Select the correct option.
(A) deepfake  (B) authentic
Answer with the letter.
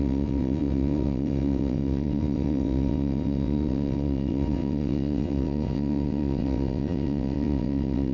A